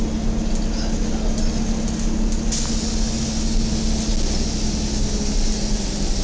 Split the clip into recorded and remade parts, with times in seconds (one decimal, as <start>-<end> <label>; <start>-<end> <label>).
0.0-6.2 recorded